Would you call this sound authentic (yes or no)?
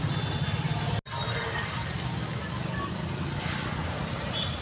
yes